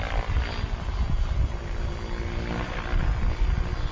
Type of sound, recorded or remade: recorded